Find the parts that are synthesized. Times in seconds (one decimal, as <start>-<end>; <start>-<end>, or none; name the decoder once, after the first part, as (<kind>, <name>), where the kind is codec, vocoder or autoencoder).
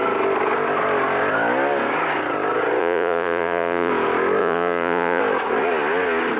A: 2.8-3.9 (vocoder, Vocos); 4.4-5.2